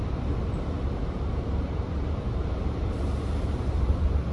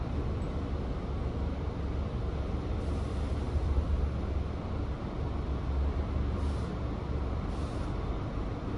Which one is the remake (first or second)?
first